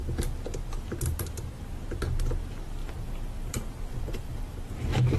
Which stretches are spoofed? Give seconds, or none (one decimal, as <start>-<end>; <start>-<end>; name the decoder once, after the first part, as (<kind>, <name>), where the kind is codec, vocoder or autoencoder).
2.8-5.2 (vocoder, BigVGAN v2)